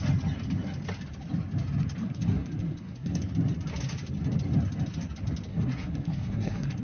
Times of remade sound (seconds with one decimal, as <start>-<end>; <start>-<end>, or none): 2.0-3.3; 5.5-6.8